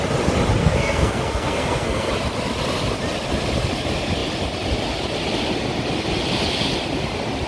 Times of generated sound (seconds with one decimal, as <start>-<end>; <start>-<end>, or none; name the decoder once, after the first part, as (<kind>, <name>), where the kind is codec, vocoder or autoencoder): 0.6-2.1 (codec, SNAC)